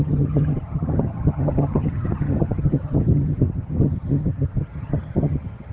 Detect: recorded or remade remade